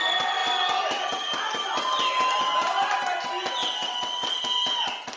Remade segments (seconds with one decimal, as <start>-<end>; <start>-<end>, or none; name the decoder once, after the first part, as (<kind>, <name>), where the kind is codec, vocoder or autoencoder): none